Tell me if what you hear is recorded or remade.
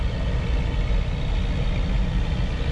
recorded